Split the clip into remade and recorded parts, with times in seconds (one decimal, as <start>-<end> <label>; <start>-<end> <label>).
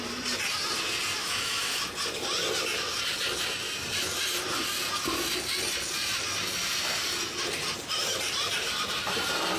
0.0-1.2 recorded; 1.2-1.8 remade; 1.8-9.6 recorded